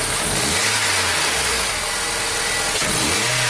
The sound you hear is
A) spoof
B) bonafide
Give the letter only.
B